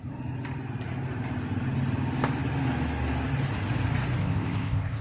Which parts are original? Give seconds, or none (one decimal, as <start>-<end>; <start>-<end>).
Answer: 0.0-4.2